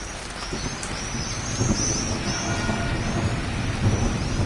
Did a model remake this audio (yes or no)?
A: no